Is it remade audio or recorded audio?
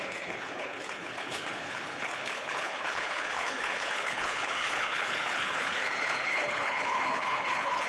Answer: remade